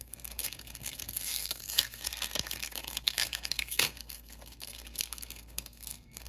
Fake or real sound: fake